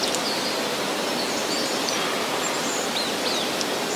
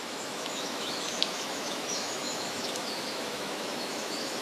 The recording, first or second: first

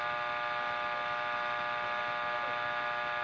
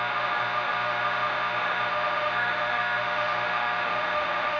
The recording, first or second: first